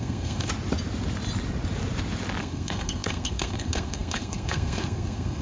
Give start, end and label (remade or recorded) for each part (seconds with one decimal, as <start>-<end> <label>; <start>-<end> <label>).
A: 0.0-0.5 remade; 0.5-2.4 recorded; 2.4-5.4 remade